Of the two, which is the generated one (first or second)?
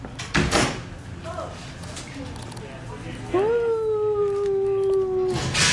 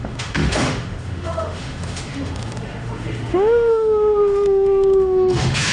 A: second